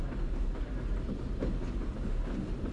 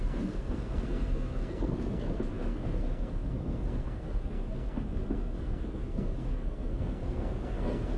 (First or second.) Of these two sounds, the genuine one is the first